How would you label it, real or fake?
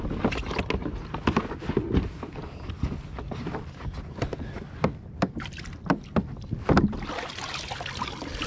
real